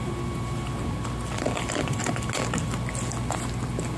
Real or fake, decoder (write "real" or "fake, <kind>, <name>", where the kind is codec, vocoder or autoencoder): real